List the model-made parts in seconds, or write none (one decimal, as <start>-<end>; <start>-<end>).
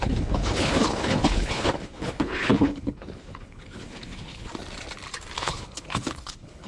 0.0-4.5; 5.4-6.7